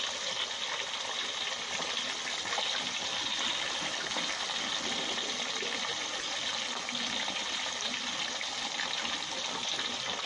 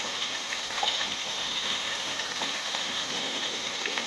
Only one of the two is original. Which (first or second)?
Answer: first